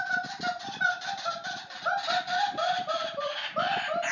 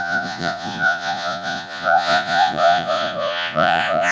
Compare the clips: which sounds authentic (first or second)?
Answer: first